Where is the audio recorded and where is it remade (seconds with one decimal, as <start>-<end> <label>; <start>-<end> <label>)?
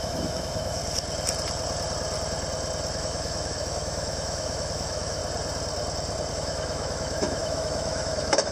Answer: 0.0-0.8 remade; 0.8-3.0 recorded; 3.0-5.2 remade; 5.2-6.3 recorded; 6.3-8.5 remade